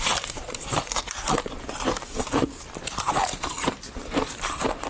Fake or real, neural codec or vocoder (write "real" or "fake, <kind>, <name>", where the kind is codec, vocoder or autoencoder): fake, vocoder, BigVGAN v2